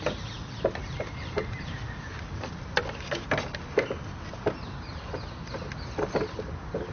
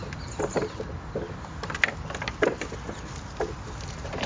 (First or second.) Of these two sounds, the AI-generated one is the first